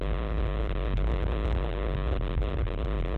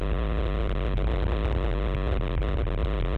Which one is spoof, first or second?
first